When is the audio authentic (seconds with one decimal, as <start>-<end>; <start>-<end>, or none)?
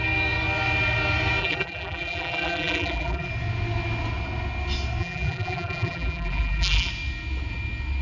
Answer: 0.0-1.4; 3.3-5.0; 6.9-8.0